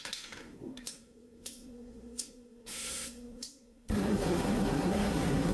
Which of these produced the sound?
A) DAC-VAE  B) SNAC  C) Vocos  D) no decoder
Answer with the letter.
B